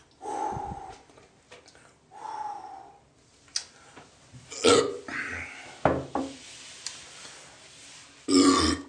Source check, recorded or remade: recorded